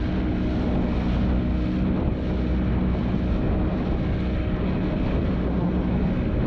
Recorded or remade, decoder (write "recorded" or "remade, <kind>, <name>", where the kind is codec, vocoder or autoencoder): recorded